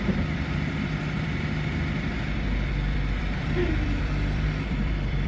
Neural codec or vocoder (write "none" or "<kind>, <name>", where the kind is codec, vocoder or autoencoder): vocoder, BigVGAN v2